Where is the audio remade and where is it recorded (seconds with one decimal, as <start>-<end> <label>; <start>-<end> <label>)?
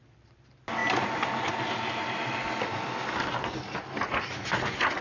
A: 0.0-5.0 recorded